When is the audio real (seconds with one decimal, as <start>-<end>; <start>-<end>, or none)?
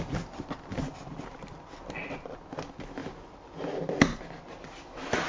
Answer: 0.0-0.7; 1.8-5.3